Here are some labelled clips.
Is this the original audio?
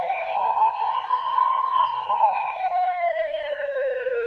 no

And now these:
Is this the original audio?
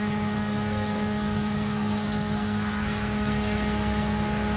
no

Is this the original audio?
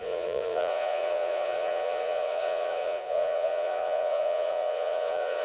no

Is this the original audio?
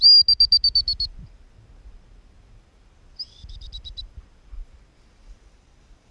yes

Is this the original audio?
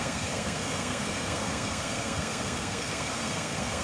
no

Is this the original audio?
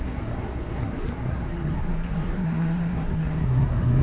no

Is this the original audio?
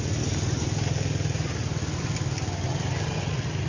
yes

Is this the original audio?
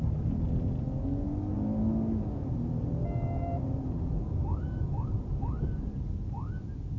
yes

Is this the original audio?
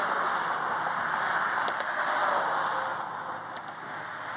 yes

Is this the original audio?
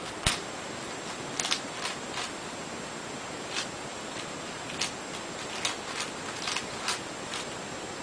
yes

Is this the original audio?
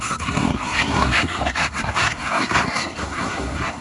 no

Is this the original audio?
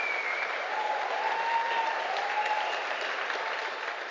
yes